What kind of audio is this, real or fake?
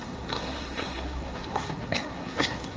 fake